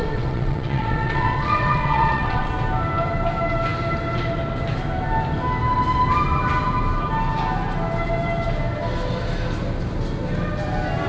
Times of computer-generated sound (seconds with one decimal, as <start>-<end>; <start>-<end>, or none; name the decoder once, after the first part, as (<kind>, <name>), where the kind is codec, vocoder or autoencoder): 0.0-2.5 (vocoder, WaveNeXt)